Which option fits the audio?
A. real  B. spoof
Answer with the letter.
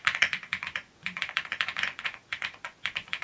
B